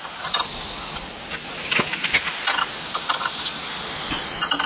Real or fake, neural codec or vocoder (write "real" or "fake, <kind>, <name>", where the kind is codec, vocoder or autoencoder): real